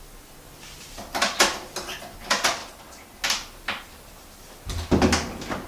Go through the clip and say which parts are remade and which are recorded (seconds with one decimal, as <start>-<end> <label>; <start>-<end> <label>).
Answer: 0.0-2.6 recorded; 2.6-3.2 remade; 3.2-5.7 recorded